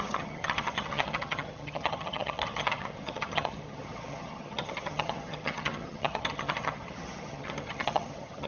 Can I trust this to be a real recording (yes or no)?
no